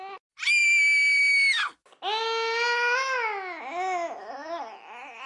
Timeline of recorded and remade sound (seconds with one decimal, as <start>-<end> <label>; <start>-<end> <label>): 0.0-5.3 recorded